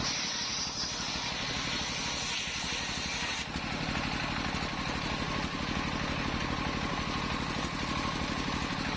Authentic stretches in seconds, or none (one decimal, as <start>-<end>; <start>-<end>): 0.0-9.0